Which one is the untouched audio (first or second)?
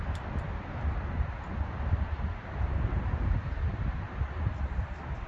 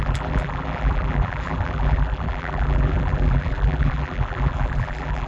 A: first